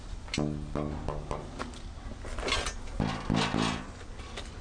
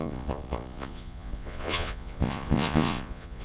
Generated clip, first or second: second